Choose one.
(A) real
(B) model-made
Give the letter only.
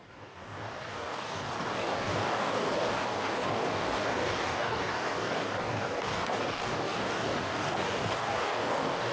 B